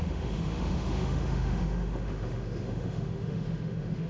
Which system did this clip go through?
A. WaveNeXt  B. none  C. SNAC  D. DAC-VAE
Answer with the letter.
D